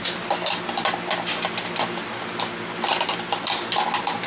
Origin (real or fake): real